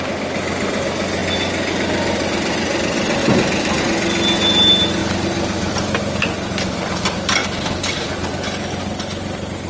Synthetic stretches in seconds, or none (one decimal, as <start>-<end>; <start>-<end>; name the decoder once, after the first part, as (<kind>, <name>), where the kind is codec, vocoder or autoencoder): 3.2-3.8 (vocoder, BigVGAN v2); 5.0-6.2; 7.4-8.3